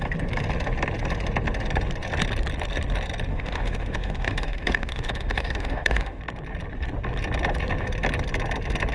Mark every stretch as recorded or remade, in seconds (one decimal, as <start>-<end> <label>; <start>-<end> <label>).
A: 0.0-3.3 recorded; 3.3-6.2 remade; 6.2-8.9 recorded